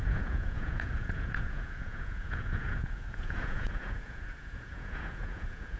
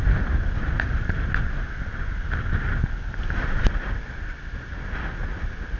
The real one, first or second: second